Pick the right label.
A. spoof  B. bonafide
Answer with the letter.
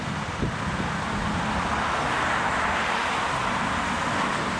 B